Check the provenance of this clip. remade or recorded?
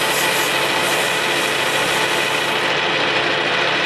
recorded